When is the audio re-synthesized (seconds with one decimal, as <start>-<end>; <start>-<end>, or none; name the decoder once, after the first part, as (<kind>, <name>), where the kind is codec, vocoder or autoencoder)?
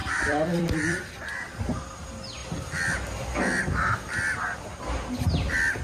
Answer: 0.0-1.2 (vocoder, BigVGAN v2)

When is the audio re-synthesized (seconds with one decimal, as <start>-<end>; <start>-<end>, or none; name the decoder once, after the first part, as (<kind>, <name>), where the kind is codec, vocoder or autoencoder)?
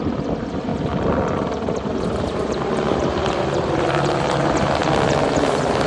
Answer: 0.0-0.7 (vocoder, BigVGAN v2); 1.7-4.8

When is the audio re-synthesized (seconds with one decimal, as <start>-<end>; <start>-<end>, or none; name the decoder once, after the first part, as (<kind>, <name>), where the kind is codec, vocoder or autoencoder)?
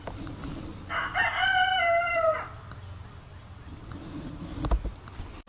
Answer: 1.7-4.5 (vocoder, BigVGAN v2)